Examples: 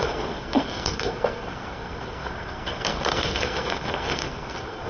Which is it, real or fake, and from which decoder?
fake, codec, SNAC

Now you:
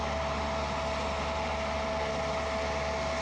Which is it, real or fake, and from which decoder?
real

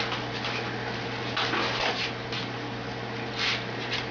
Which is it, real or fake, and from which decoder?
real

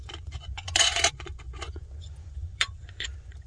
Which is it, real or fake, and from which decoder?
fake, vocoder, Vocos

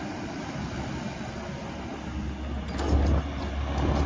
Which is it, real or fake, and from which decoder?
real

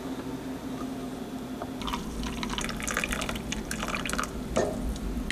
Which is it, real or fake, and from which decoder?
real